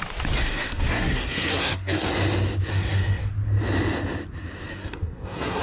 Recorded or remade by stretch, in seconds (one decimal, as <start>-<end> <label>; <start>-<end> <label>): 0.0-0.5 recorded; 0.5-2.1 remade; 2.1-2.7 recorded; 2.7-3.3 remade; 3.3-4.7 recorded; 4.7-5.6 remade